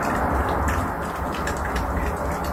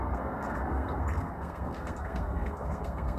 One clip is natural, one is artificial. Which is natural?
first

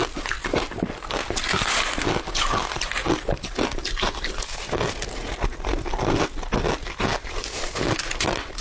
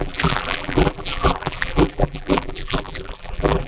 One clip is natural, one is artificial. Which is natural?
first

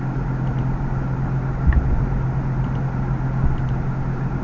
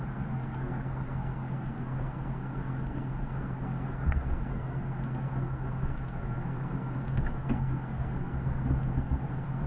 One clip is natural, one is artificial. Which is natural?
first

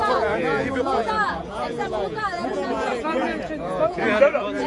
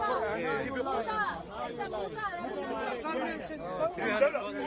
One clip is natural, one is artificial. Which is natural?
second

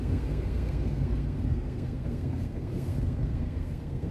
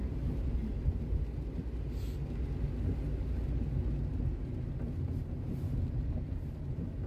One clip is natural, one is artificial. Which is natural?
second